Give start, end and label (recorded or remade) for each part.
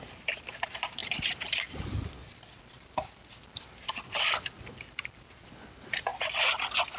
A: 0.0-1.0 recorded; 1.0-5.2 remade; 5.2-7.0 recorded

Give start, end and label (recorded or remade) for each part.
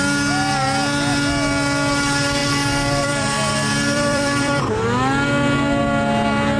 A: 0.0-2.4 recorded; 2.4-4.6 remade; 4.6-6.6 recorded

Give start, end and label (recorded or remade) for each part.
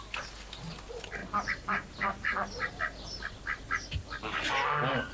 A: 0.0-1.2 recorded; 1.2-2.8 remade; 2.8-5.1 recorded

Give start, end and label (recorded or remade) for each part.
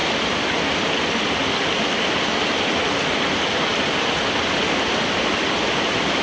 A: 0.0-6.2 recorded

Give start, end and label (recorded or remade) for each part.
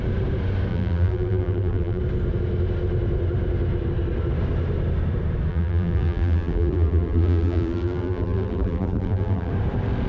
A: 0.0-0.7 recorded; 0.7-2.0 remade; 2.0-5.5 recorded; 5.5-9.5 remade; 9.5-10.1 recorded